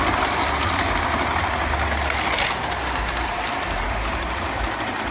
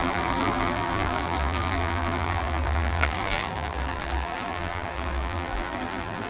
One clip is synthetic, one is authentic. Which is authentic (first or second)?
first